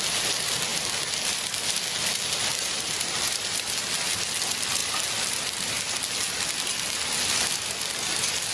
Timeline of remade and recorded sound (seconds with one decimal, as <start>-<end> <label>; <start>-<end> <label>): 0.0-8.5 recorded